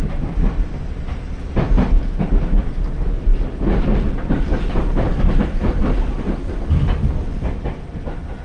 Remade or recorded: recorded